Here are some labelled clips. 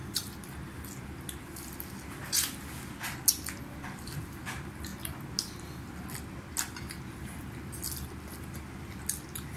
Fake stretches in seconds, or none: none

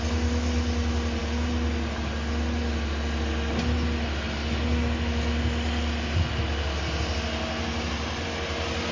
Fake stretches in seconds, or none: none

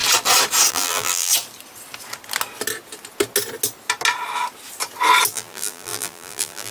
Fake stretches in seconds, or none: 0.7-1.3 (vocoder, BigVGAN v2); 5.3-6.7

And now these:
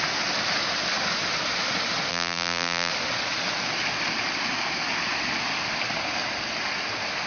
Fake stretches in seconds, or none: 2.1-2.9 (vocoder, BigVGAN v2)

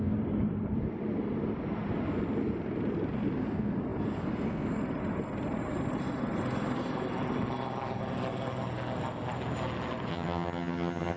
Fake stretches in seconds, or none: 10.1-11.2 (vocoder, HiFi-GAN)